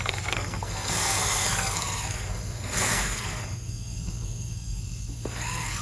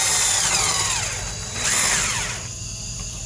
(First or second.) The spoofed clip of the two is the first